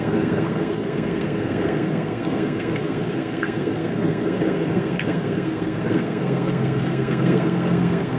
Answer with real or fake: fake